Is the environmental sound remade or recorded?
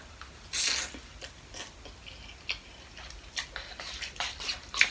recorded